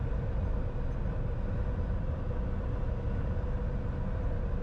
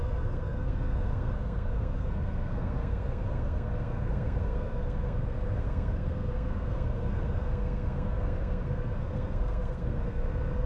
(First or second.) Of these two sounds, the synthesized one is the second